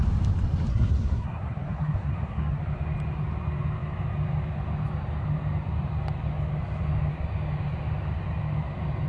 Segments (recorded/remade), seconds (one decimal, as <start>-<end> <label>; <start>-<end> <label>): 0.0-0.7 recorded; 0.7-2.6 remade; 2.6-9.1 recorded